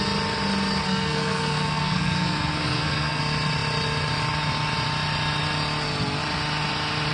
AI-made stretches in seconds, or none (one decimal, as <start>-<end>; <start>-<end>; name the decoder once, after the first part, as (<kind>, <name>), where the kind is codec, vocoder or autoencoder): 0.8-3.2 (codec, SNAC)